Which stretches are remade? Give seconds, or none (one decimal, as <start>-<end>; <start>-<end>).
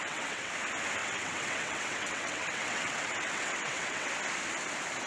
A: 0.0-0.5; 1.0-4.1